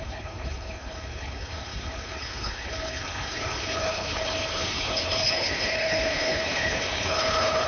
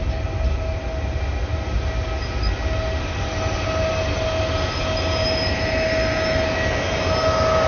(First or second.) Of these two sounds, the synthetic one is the first